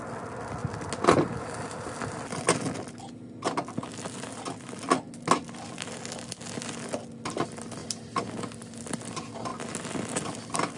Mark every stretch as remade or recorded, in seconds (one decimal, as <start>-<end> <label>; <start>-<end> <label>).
0.0-10.8 recorded